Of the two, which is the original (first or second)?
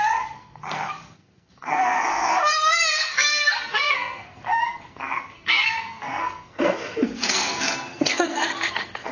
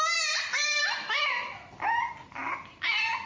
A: second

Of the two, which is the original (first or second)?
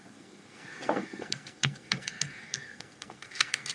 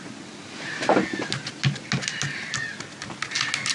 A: second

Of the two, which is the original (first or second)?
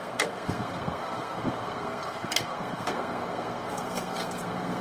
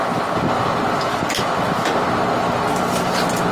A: second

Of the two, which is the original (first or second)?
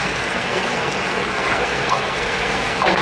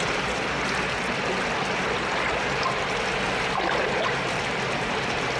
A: second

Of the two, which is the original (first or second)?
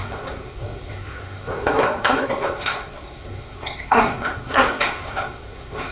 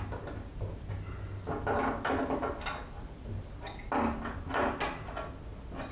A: second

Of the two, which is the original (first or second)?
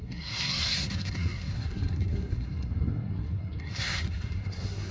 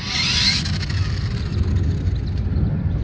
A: second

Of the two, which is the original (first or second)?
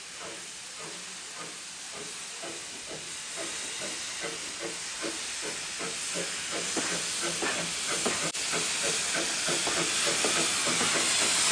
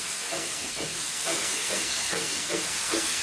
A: first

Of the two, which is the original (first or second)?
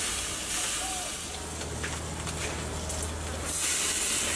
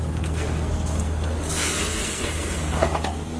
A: first